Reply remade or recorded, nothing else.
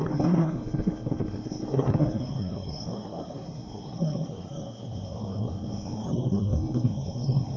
remade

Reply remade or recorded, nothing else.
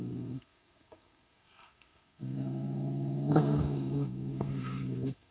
remade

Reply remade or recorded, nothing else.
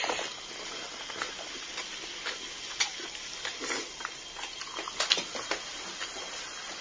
recorded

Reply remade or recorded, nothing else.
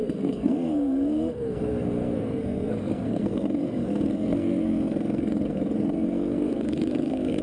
remade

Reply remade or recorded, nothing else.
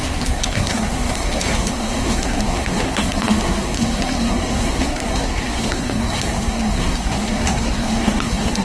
remade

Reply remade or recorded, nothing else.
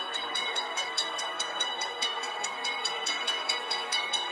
remade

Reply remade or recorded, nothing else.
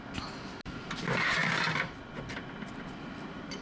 recorded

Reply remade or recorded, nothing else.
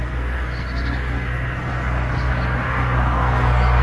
remade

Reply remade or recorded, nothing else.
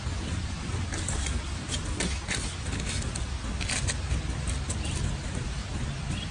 recorded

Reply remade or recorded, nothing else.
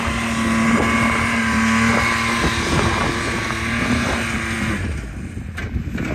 recorded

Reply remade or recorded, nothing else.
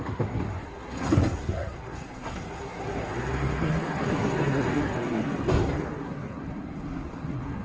remade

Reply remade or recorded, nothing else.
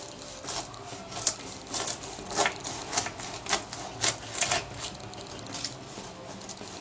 recorded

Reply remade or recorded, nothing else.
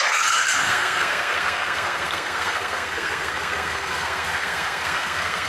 remade